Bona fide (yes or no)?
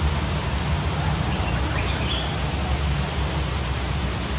yes